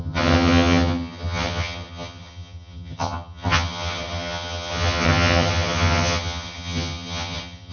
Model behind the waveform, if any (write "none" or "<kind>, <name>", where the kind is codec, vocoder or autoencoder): vocoder, HiFi-GAN